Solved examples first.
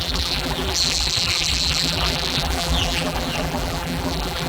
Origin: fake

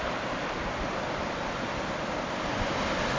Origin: real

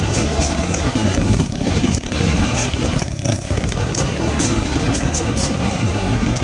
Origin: fake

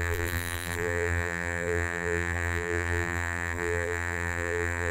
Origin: fake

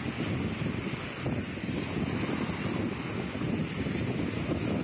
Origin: real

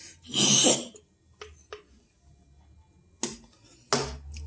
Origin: real